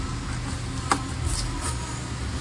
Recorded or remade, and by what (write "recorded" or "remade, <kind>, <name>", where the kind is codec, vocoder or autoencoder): recorded